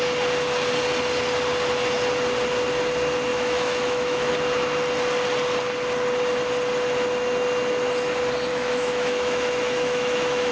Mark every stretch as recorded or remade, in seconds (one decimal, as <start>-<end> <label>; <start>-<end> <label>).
0.0-3.3 recorded; 3.3-4.3 remade; 4.3-8.5 recorded; 8.5-10.5 remade